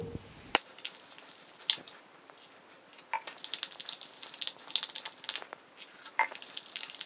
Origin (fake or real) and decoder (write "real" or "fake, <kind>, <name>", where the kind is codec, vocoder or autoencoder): real